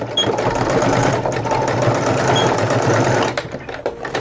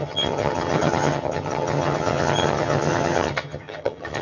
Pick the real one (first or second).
first